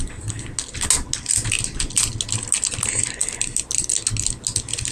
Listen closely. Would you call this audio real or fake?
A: real